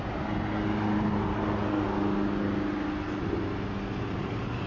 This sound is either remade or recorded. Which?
recorded